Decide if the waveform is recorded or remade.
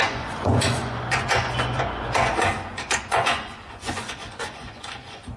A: remade